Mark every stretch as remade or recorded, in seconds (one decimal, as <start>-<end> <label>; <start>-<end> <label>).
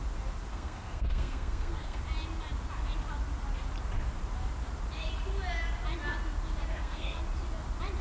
0.0-0.5 recorded; 0.5-2.0 remade; 2.0-6.7 recorded; 6.7-7.2 remade; 7.2-8.0 recorded